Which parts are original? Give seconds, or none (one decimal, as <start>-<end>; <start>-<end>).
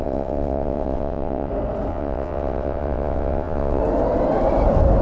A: 1.5-1.9; 3.8-5.0